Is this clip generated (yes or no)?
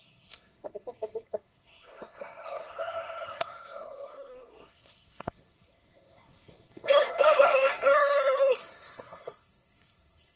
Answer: yes